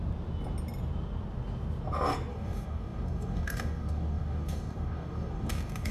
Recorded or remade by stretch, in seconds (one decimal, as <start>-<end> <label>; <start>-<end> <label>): 0.0-2.3 recorded; 2.3-5.9 remade